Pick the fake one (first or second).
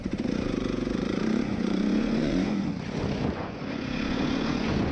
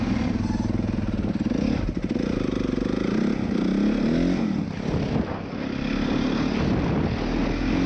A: first